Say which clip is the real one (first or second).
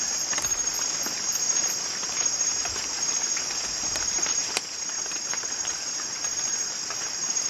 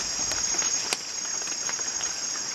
second